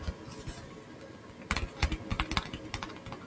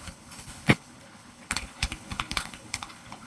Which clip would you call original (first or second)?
first